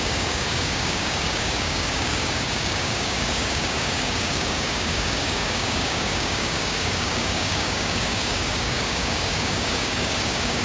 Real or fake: fake